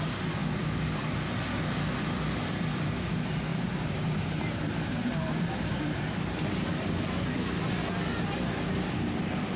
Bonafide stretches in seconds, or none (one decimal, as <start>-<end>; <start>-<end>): 0.0-3.5; 6.5-9.6

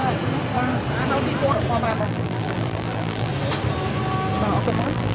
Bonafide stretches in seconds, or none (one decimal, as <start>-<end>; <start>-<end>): 0.0-1.9; 3.3-4.6

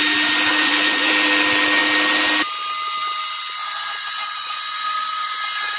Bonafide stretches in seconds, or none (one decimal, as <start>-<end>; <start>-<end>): 0.0-0.5; 1.1-3.6

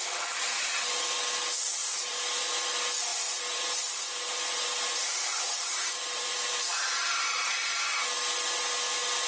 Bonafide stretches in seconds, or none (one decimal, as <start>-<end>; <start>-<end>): 0.0-1.8; 2.5-3.1; 7.7-9.3

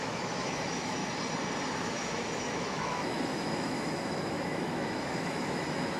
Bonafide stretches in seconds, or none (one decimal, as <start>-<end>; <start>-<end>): 1.0-1.8

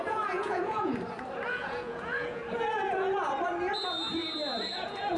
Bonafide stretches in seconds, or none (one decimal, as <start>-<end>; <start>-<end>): 0.9-1.5; 2.4-4.6

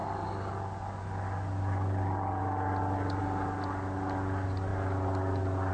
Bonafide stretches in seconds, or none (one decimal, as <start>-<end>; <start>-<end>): 0.0-5.7